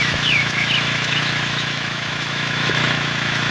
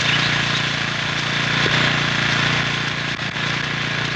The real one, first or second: second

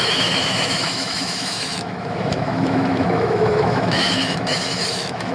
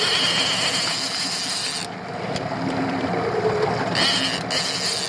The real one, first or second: second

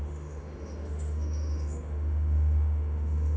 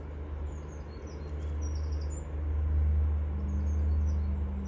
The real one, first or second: second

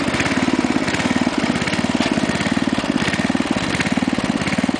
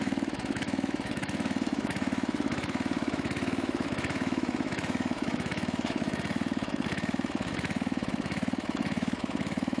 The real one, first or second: first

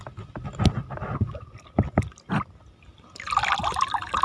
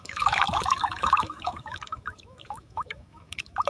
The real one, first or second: first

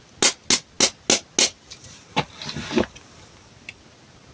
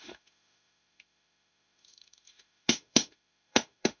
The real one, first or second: first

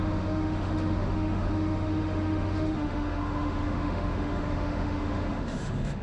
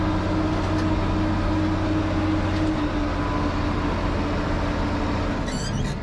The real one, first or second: second